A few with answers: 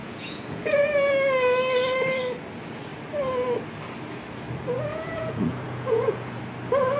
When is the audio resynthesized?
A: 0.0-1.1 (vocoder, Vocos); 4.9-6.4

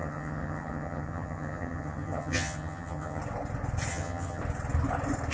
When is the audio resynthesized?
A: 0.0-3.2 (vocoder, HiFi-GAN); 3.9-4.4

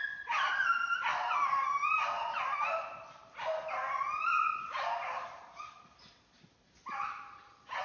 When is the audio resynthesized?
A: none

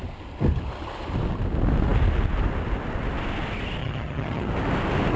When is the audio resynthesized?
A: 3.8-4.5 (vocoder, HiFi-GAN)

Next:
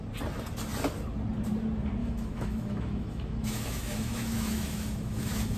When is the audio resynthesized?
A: 2.0-5.6 (autoencoder, DAC-VAE)

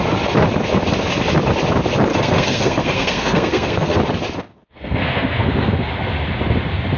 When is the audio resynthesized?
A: 2.1-4.0 (codec, SNAC); 4.5-5.9

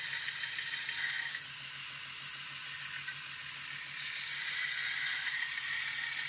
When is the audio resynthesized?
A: none

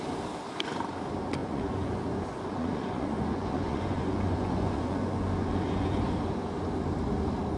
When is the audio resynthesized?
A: 1.4-6.0 (vocoder, Vocos)